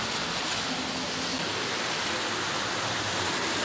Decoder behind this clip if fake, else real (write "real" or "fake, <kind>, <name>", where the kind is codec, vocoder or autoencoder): real